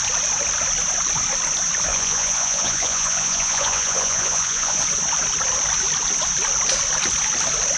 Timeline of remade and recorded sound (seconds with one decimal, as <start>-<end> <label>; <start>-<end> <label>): 0.0-1.9 recorded; 1.9-4.8 remade; 4.8-7.8 recorded

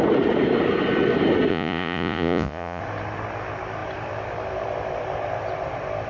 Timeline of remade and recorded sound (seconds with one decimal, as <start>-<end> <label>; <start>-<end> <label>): 0.0-1.5 recorded; 1.5-2.8 remade; 2.8-6.1 recorded

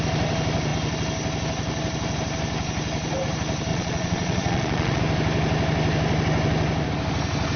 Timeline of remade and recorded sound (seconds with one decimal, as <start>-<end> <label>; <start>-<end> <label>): 0.0-3.7 recorded; 3.7-5.0 remade; 5.0-7.6 recorded

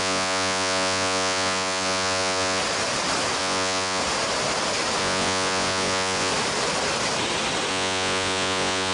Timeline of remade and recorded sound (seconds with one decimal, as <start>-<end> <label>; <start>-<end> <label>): 0.0-2.6 remade; 2.6-3.4 recorded; 3.4-4.0 remade; 4.0-5.0 recorded; 5.0-6.3 remade; 6.3-7.7 recorded; 7.7-8.9 remade

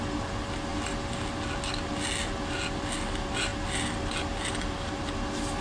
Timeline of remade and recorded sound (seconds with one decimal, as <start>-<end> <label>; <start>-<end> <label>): 0.0-5.6 recorded